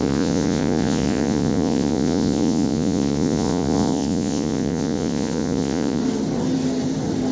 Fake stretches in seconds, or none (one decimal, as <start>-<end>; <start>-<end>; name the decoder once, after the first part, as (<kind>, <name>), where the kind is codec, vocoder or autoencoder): 0.0-6.0 (vocoder, Vocos)